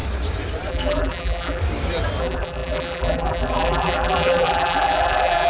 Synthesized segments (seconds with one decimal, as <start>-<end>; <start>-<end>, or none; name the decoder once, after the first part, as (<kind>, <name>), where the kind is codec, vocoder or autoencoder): 0.7-1.6 (vocoder, BigVGAN v2); 2.2-5.5